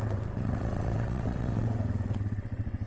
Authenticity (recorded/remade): remade